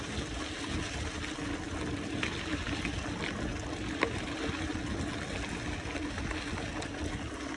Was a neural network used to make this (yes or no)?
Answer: no